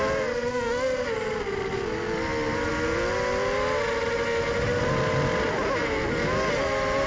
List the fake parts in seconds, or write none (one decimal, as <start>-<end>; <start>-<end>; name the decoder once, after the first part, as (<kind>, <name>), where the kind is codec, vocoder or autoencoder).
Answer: none